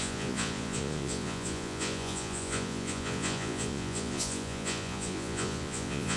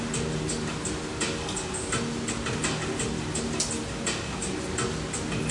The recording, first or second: second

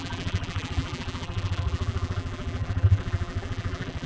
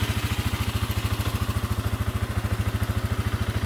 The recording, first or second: second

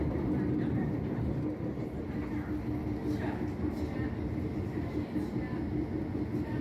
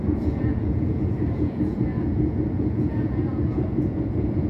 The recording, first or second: first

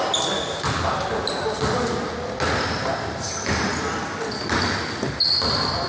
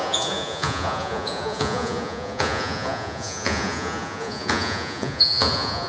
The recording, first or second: first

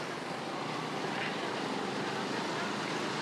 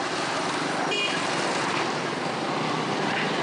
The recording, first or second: first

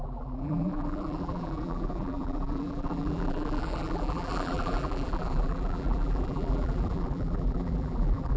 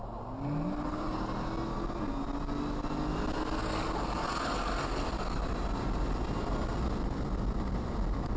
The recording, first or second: second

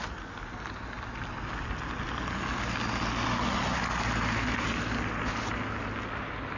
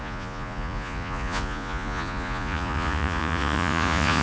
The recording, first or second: first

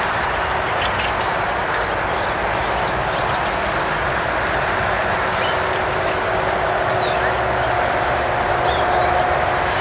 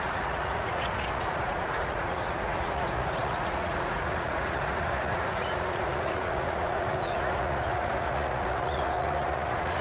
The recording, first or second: first